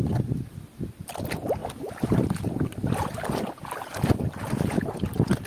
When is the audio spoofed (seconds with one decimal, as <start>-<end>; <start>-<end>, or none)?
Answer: none